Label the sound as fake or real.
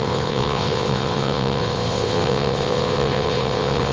fake